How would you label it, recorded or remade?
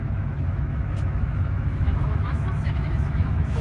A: remade